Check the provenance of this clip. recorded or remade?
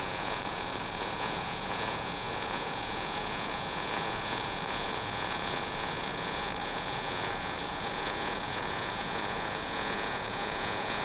remade